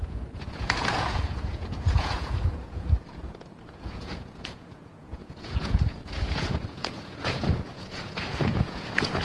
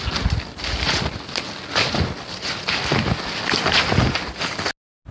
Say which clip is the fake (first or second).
first